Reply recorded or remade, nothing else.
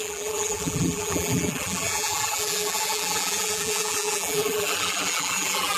remade